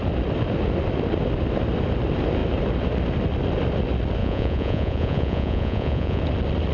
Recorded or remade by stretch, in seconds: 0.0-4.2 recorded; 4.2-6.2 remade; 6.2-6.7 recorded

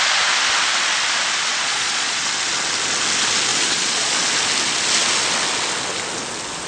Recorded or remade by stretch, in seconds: 0.0-1.5 recorded; 1.5-2.2 remade; 2.2-3.5 recorded; 3.5-4.3 remade; 4.3-6.7 recorded